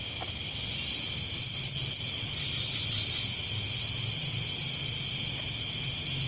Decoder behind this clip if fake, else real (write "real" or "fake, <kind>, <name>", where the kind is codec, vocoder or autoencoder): real